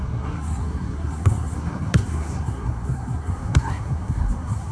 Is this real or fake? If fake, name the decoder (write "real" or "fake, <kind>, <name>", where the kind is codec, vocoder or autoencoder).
fake, codec, SNAC